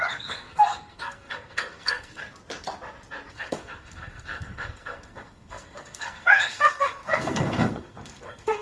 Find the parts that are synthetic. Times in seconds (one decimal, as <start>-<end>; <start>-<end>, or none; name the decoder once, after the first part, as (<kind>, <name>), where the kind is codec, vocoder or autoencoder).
0.0-2.2 (codec, SNAC); 3.3-8.6